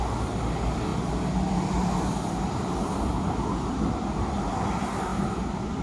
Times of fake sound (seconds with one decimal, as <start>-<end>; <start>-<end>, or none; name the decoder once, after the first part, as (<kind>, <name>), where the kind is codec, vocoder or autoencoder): 0.9-4.4 (vocoder, BigVGAN v2); 5.1-5.8